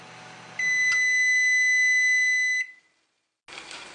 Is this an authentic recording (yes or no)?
yes